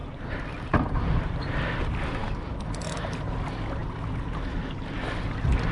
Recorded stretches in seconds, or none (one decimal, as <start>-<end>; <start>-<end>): 1.7-5.7

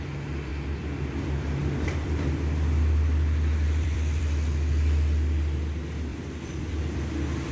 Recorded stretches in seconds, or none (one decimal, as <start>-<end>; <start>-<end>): 0.0-1.6; 4.2-6.1